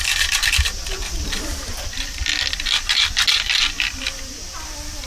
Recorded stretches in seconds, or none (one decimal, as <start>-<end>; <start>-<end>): 0.0-5.1